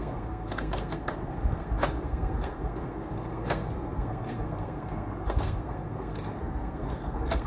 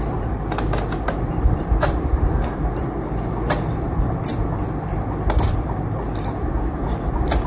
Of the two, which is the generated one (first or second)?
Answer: first